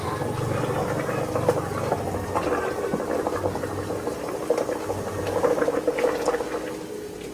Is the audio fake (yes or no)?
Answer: no